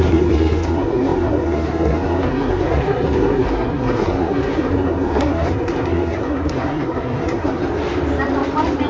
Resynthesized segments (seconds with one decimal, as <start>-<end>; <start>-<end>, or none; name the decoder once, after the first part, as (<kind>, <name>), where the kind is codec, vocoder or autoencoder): 0.0-7.6 (codec, SNAC)